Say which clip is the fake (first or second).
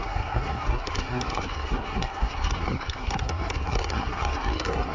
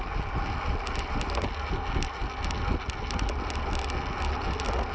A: first